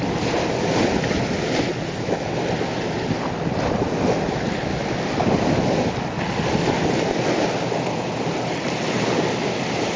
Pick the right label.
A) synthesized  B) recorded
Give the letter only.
B